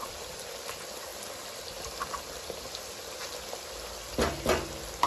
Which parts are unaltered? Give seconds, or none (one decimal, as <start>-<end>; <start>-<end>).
0.0-5.1